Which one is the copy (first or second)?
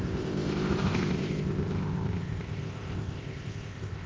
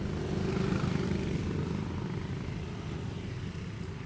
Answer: first